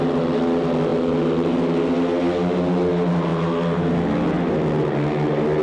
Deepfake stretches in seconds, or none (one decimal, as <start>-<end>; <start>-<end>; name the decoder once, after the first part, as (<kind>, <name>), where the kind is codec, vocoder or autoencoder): none